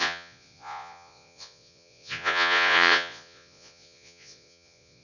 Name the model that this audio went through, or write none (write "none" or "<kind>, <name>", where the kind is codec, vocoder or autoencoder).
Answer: vocoder, Vocos